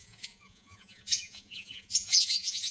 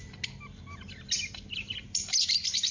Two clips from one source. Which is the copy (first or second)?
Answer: first